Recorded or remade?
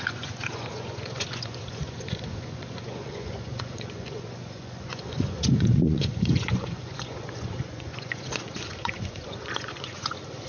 remade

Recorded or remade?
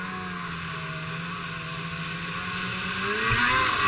recorded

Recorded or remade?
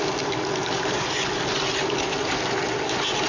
recorded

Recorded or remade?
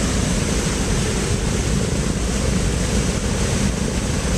recorded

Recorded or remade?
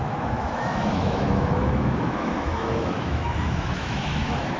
remade